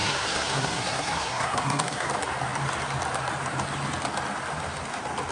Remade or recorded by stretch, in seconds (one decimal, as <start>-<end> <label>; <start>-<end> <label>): 0.0-2.1 remade; 2.1-5.3 recorded